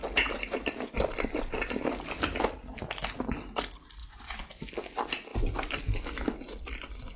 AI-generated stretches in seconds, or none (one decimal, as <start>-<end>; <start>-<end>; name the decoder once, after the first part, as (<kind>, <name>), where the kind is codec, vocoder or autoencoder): 4.0-4.5 (vocoder, Vocos)